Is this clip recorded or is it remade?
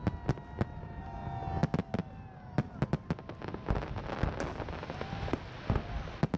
recorded